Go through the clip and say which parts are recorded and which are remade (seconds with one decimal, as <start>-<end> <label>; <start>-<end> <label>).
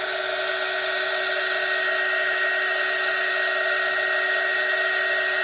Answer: 0.0-5.4 recorded